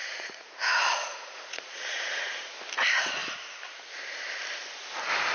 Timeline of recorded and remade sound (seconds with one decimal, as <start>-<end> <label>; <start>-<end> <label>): 0.0-2.5 remade; 2.5-5.3 recorded